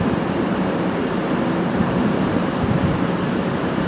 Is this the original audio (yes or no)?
no